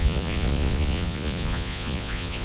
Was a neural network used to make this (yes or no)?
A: yes